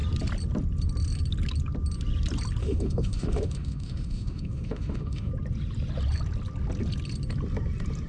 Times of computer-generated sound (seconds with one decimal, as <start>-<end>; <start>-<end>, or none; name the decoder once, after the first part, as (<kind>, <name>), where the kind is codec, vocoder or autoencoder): 2.6-5.3 (autoencoder, DAC-VAE)